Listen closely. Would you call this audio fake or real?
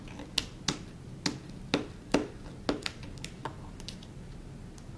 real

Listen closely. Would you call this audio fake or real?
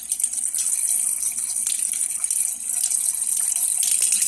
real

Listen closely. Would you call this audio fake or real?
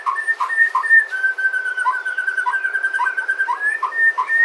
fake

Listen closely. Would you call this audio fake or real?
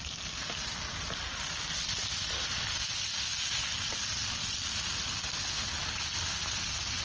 real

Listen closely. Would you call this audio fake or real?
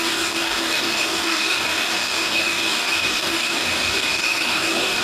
fake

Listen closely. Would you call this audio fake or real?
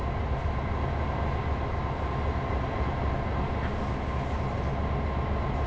real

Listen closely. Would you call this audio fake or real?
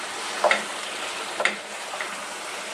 fake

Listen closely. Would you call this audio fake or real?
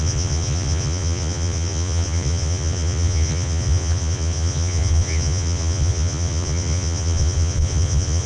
fake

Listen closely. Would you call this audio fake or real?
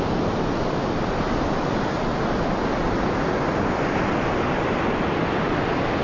real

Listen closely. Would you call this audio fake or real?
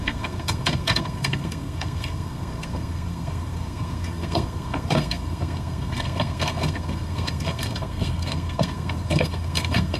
fake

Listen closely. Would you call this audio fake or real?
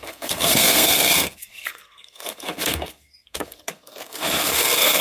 fake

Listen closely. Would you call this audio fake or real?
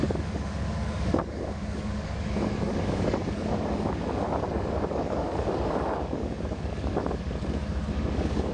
fake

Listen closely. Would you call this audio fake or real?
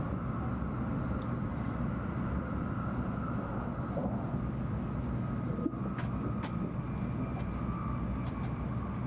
real